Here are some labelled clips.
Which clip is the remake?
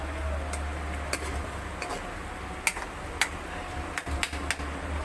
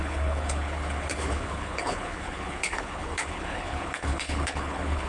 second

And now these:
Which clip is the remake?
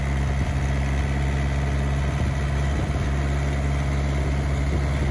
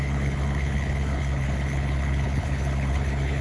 second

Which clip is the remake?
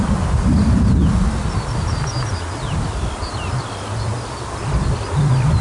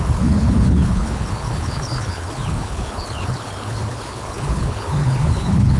second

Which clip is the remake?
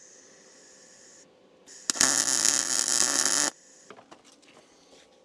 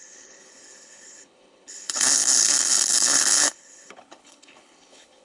second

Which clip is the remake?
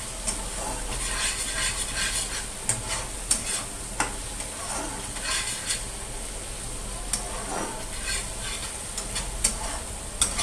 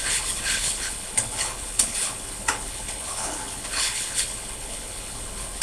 second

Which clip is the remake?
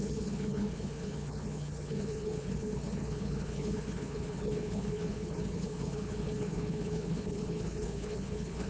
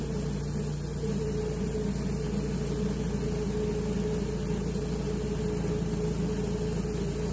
first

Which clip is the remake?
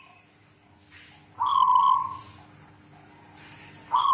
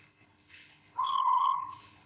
second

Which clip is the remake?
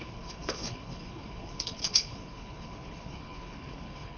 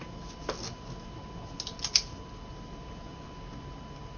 first